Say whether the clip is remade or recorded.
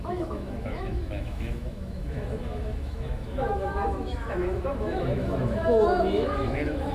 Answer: remade